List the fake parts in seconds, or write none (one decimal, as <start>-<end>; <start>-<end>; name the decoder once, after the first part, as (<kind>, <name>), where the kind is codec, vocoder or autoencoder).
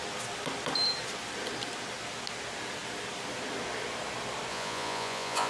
4.5-5.5 (vocoder, Vocos)